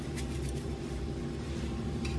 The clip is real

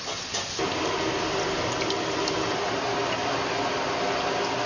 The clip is real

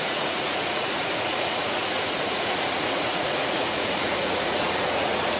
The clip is fake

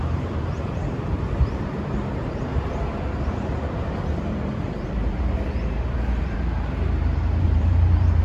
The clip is fake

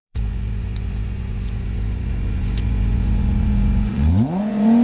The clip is fake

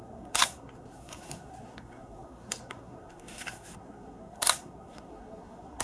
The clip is fake